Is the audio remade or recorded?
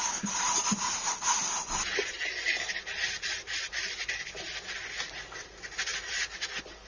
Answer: recorded